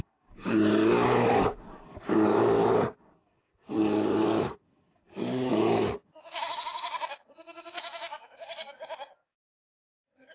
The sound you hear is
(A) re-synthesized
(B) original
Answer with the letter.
A